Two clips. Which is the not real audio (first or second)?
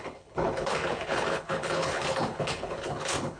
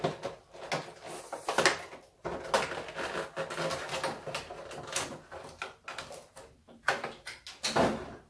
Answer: first